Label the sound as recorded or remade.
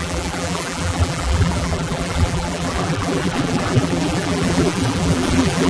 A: remade